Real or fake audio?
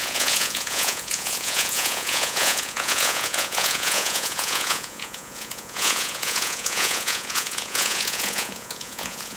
fake